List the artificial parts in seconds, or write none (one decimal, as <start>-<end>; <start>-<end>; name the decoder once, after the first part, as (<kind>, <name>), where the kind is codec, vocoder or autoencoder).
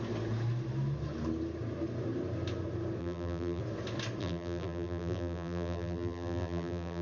3.0-3.6 (vocoder, BigVGAN v2); 4.2-7.0